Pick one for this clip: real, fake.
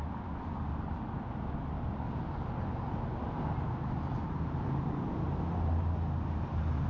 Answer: real